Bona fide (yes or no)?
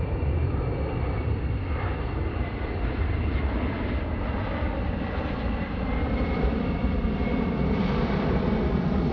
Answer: no